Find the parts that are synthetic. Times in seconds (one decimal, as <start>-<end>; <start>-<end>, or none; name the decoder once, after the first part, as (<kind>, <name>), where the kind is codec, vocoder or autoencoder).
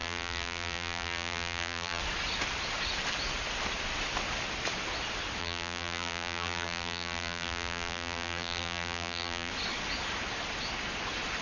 0.0-2.0 (vocoder, BigVGAN v2); 5.4-9.5